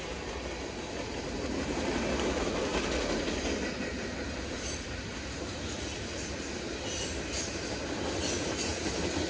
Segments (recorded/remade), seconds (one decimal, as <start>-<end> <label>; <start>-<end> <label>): 0.0-9.3 recorded